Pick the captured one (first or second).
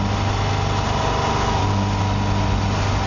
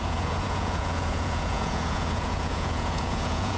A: first